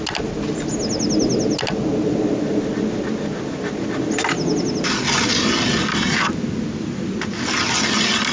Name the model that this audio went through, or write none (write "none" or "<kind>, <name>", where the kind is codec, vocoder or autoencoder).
none